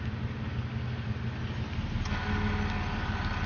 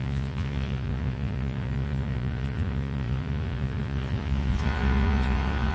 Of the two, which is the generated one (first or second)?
second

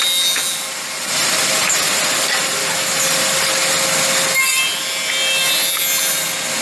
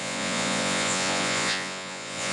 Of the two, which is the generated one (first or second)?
second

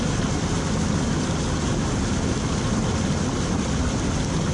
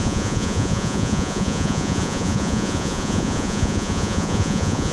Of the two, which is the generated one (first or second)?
second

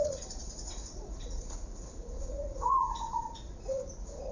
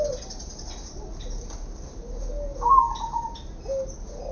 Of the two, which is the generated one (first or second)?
first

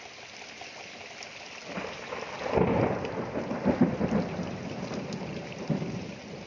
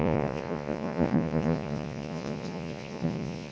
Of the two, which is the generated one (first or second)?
second